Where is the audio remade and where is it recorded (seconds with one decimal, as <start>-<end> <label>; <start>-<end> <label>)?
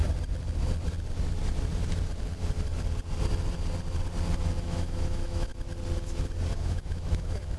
0.0-4.6 recorded; 4.6-5.5 remade; 5.5-6.6 recorded; 6.6-7.6 remade